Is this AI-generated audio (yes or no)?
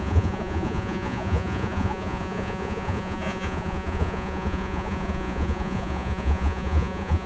yes